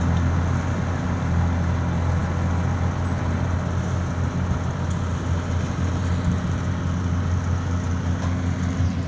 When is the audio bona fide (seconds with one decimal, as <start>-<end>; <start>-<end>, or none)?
0.0-9.1